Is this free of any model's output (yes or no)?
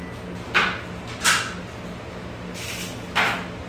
yes